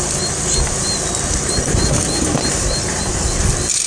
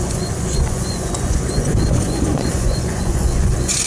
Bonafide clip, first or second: first